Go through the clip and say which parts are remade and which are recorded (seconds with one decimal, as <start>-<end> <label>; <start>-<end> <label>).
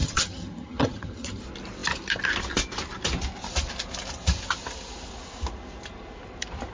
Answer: 0.0-1.4 remade; 1.4-6.7 recorded